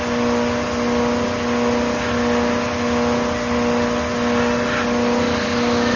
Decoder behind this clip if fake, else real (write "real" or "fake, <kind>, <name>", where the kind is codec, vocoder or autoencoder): real